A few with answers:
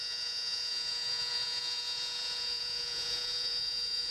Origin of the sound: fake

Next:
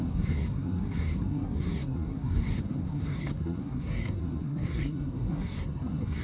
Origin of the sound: fake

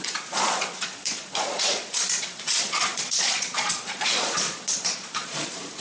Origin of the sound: fake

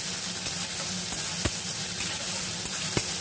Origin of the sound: real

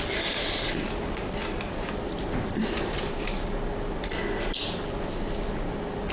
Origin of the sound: real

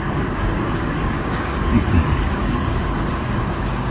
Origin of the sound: fake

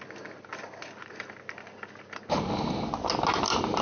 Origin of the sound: real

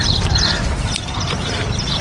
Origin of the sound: fake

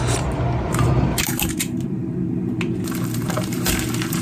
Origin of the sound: fake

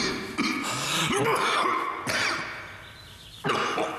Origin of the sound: real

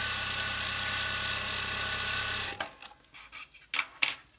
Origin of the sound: real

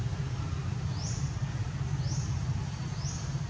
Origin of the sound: real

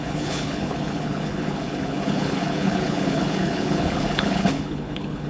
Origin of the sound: fake